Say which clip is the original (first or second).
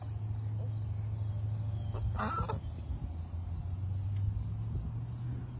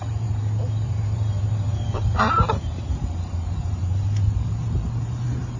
first